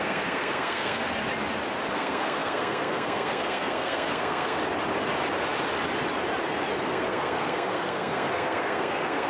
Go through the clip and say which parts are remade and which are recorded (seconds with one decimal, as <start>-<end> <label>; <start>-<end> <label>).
0.0-1.0 remade; 1.0-1.9 recorded; 1.9-4.6 remade; 4.6-6.8 recorded; 6.8-9.3 remade